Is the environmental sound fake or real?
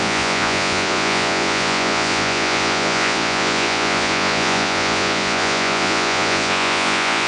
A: fake